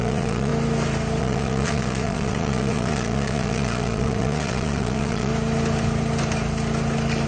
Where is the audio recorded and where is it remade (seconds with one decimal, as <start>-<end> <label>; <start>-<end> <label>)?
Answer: 0.0-0.5 remade; 0.5-1.2 recorded; 1.2-5.3 remade; 5.3-7.3 recorded